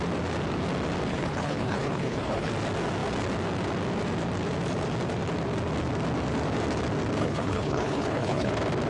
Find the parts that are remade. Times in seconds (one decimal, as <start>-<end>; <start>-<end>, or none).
1.1-2.5; 7.2-8.5